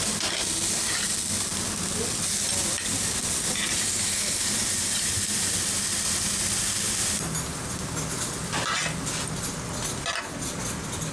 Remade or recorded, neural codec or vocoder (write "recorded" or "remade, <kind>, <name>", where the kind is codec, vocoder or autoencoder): recorded